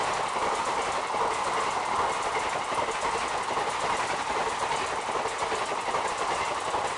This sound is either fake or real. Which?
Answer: real